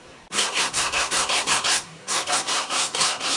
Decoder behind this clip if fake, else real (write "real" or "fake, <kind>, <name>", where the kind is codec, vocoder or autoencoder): fake, codec, SNAC